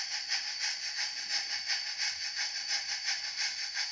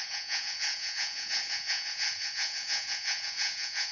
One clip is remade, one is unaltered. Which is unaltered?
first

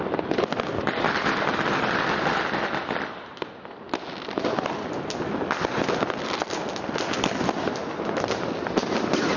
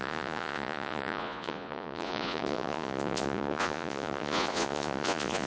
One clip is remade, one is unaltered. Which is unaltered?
first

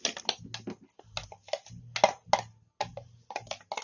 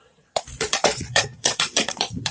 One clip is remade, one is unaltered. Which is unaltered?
first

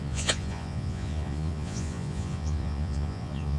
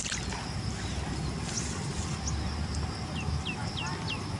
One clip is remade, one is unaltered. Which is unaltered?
second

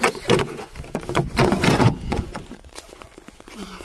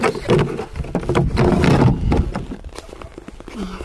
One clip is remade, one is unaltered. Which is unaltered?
second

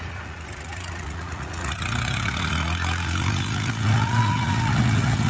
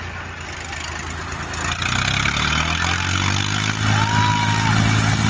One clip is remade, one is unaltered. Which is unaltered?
second